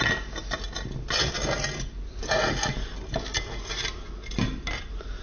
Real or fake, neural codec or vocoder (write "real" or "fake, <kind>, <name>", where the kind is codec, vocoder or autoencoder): real